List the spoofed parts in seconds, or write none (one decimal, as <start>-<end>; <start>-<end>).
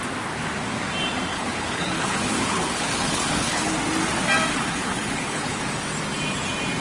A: 1.3-3.7; 4.5-5.6